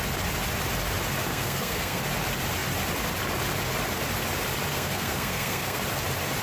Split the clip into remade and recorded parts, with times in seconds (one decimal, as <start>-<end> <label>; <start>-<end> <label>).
0.0-1.3 recorded; 1.3-2.0 remade; 2.0-4.7 recorded; 4.7-5.8 remade; 5.8-6.4 recorded